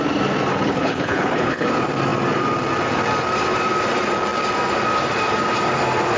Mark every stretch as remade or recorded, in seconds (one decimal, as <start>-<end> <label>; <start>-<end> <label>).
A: 0.0-0.5 recorded; 0.5-1.7 remade; 1.7-6.2 recorded